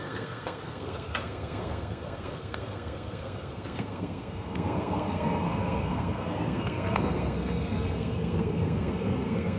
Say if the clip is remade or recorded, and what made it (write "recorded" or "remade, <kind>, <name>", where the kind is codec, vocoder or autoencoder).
remade, codec, SNAC